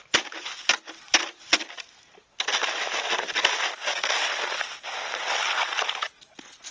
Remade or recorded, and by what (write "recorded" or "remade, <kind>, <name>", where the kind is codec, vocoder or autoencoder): recorded